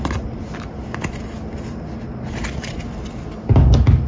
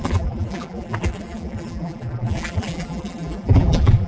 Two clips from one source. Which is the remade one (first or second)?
second